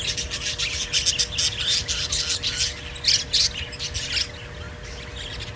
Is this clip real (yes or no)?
yes